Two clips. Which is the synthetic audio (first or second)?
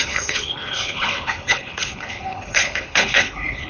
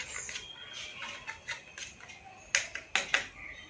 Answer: first